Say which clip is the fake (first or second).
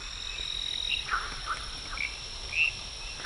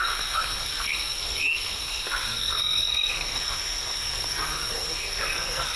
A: second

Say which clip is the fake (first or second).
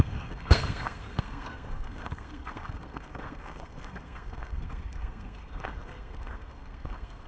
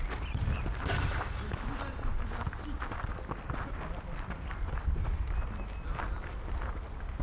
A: first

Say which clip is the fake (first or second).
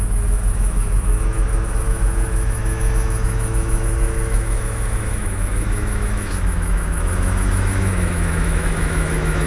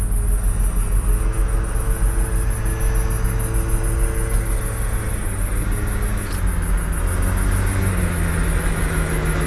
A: first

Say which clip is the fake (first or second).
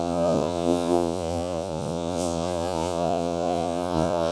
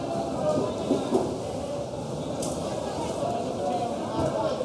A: first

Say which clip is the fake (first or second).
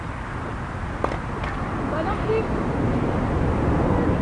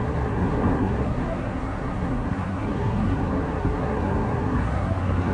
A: second